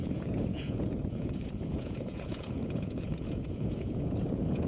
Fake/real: fake